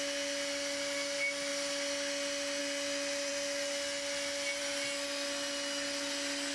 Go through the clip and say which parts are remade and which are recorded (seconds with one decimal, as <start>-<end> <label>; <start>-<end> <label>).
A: 0.0-6.5 recorded